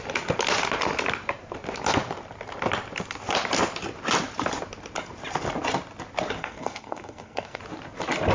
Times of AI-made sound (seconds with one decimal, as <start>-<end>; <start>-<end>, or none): 6.4-7.6